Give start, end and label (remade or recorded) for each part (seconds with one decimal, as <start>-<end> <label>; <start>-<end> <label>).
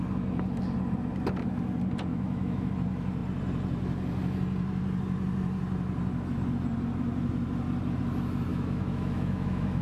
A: 0.0-2.1 recorded; 2.1-2.7 remade; 2.7-8.5 recorded; 8.5-9.8 remade